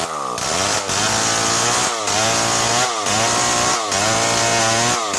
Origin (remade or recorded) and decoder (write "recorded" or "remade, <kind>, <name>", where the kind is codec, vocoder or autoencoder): recorded